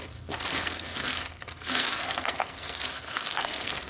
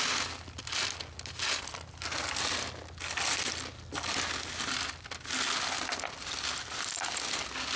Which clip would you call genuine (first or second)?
second